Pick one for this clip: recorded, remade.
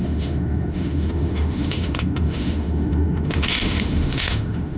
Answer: remade